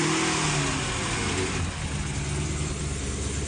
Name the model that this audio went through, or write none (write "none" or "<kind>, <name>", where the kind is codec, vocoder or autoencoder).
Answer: none